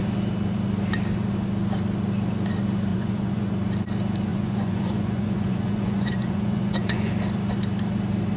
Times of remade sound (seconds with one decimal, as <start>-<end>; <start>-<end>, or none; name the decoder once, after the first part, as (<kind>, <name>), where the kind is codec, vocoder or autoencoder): 2.9-3.5 (vocoder, Vocos); 4.3-7.1